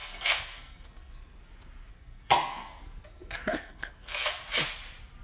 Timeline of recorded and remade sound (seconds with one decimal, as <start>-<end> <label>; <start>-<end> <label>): 0.0-1.4 remade; 1.4-1.9 recorded; 1.9-4.4 remade; 4.4-5.2 recorded